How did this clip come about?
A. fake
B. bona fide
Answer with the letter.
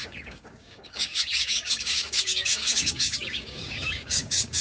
A